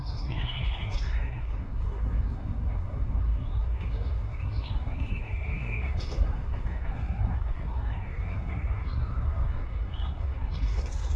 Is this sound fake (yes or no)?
yes